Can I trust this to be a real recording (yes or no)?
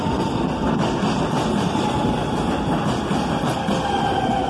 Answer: yes